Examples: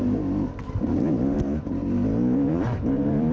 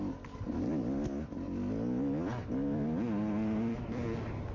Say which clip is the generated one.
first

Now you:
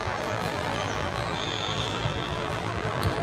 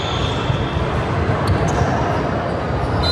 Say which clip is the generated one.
first